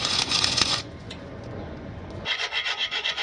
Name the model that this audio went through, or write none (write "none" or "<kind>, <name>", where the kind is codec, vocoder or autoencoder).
vocoder, Vocos